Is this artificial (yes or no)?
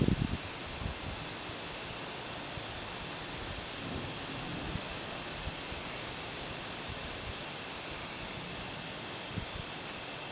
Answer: no